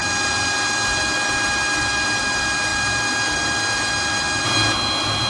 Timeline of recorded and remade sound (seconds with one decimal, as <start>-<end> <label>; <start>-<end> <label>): 0.0-5.3 recorded